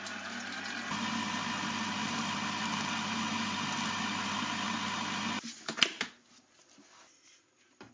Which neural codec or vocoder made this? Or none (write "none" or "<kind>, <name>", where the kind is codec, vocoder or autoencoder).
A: none